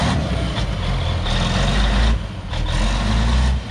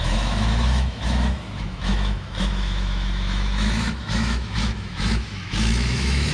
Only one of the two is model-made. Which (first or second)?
second